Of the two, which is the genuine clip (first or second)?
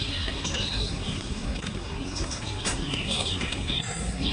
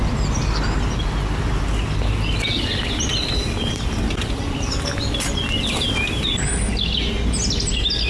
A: second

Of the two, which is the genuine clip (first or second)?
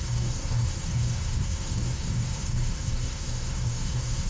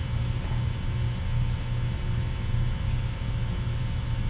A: second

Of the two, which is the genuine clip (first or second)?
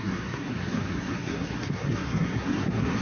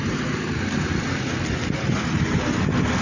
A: second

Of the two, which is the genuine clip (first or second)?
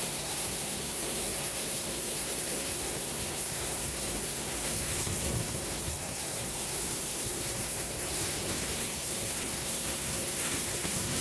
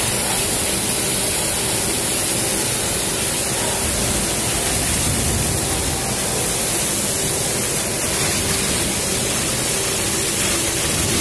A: second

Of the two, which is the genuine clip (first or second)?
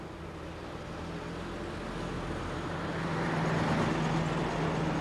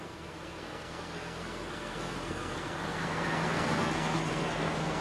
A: first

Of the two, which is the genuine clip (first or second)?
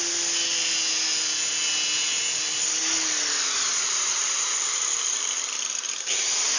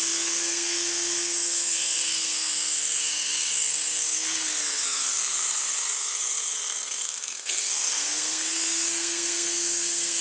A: first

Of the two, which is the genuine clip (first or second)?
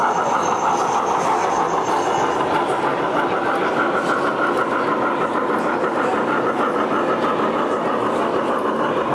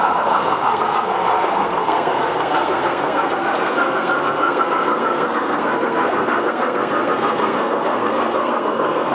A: first